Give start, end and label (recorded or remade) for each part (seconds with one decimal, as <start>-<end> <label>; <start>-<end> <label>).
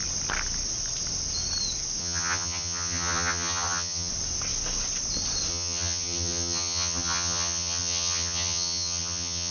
0.0-2.0 recorded; 2.0-4.1 remade; 4.1-5.5 recorded; 5.5-9.5 remade